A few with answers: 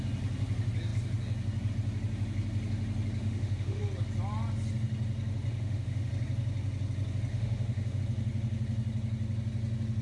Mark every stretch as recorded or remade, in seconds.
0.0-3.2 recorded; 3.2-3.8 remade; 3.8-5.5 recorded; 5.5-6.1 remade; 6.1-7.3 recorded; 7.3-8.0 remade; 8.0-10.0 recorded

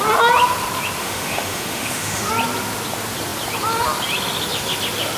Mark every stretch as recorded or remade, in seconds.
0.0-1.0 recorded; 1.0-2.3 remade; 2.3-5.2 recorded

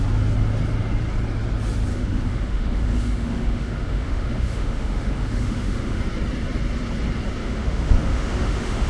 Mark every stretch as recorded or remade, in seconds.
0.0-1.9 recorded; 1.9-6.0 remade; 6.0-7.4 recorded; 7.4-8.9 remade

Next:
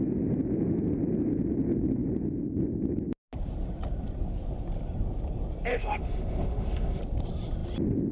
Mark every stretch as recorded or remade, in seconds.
0.0-5.7 recorded; 5.7-7.0 remade; 7.0-8.1 recorded